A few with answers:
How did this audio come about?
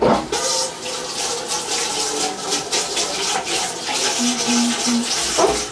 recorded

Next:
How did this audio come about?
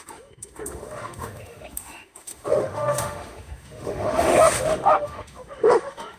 remade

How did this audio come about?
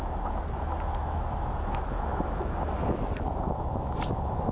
remade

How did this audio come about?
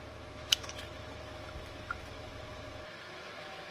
remade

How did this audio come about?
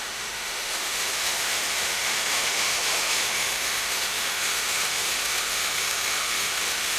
remade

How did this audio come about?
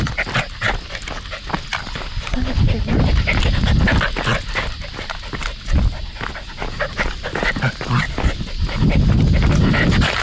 recorded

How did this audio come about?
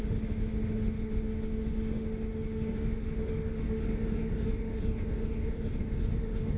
remade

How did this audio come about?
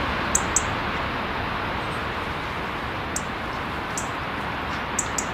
recorded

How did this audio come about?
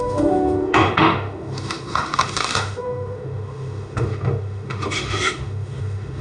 remade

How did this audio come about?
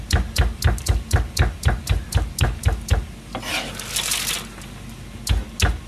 recorded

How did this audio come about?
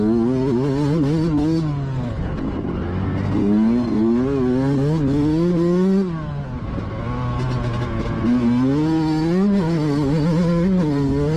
recorded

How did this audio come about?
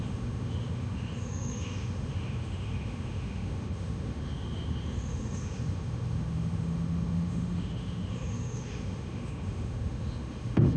remade